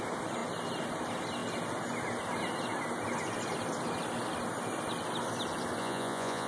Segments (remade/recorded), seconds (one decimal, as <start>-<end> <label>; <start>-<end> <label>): 0.0-5.8 recorded; 5.8-6.5 remade